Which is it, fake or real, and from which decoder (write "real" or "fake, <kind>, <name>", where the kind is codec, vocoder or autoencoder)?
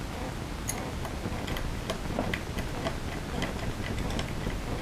real